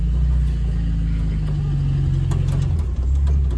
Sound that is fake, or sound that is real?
real